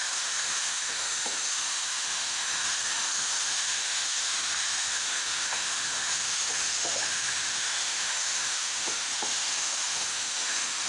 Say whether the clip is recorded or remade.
remade